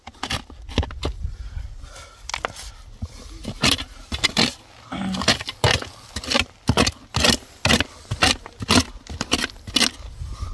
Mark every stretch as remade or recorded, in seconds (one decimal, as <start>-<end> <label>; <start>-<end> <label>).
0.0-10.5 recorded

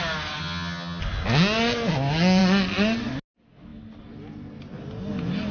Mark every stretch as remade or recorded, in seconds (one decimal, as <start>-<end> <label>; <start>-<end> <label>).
0.0-0.4 recorded; 0.4-1.0 remade; 1.0-5.5 recorded

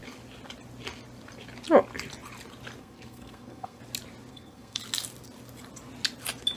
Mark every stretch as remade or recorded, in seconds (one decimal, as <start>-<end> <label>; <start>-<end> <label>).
0.0-2.8 recorded; 2.8-3.8 remade; 3.8-4.3 recorded; 4.3-4.8 remade; 4.8-6.6 recorded

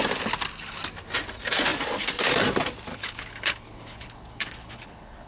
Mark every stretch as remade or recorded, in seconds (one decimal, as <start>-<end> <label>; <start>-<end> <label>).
0.0-2.9 recorded; 2.9-5.3 remade

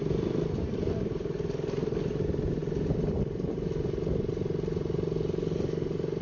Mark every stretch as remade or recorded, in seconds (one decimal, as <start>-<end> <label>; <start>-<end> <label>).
0.0-6.2 recorded

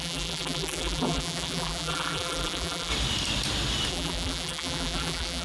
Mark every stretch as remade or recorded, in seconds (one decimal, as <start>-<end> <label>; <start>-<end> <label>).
0.0-2.9 remade; 2.9-3.9 recorded; 3.9-5.4 remade

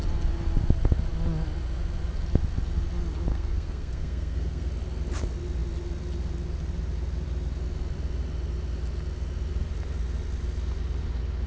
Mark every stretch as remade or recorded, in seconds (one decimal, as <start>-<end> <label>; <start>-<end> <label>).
0.0-3.3 recorded; 3.3-4.7 remade; 4.7-11.5 recorded